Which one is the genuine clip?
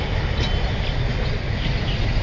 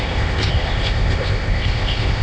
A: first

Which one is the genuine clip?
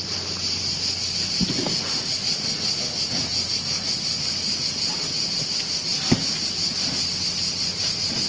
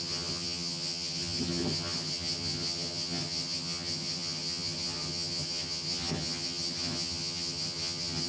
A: first